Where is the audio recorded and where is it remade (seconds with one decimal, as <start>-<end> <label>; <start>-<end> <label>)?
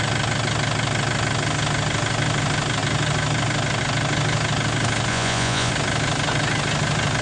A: 0.0-5.1 recorded; 5.1-5.7 remade; 5.7-7.2 recorded